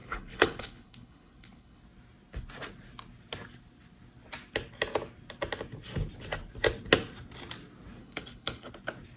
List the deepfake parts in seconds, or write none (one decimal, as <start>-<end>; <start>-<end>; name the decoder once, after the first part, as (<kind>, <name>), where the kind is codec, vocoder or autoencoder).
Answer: 0.0-1.8 (codec, HILCodec); 8.0-8.7